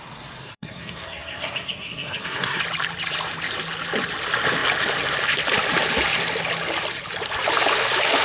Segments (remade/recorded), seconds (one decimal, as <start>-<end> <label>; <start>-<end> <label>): 0.0-0.4 recorded; 0.4-2.6 remade; 2.6-8.2 recorded